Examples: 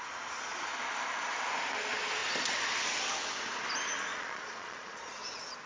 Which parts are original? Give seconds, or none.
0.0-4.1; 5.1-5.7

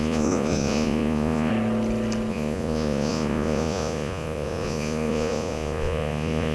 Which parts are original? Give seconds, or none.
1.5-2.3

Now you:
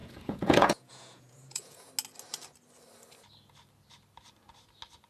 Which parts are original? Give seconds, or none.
1.9-5.1

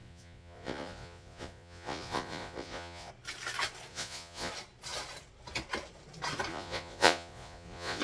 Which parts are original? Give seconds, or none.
3.1-3.9; 4.5-6.5

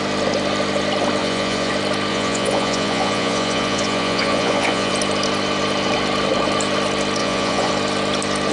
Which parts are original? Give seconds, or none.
0.0-1.2; 1.7-2.1; 4.9-7.2; 7.7-8.5

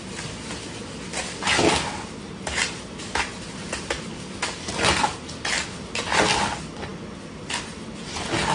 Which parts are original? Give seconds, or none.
0.0-8.5

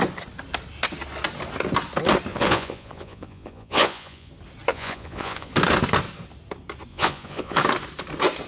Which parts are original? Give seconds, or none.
0.0-2.3; 4.3-4.7; 5.5-6.9; 7.6-8.5

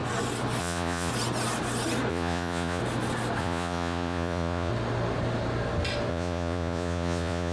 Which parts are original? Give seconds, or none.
0.0-0.6; 1.1-2.1; 2.8-3.4; 4.7-6.1